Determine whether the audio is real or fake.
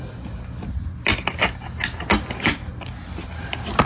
real